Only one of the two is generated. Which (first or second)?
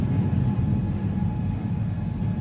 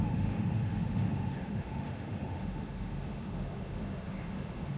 second